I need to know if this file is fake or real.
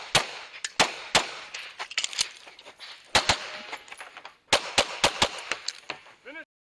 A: real